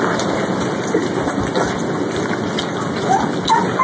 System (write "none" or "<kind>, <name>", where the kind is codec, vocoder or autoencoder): none